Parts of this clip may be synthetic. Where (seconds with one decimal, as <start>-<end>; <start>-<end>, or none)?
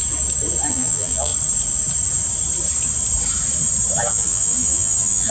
0.7-1.3; 4.1-5.3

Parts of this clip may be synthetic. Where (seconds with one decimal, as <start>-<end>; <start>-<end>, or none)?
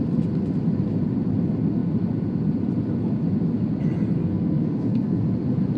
4.2-5.2